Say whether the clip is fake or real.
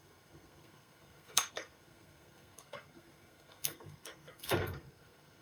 fake